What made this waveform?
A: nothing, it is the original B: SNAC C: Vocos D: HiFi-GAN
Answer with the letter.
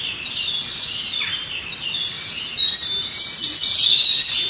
A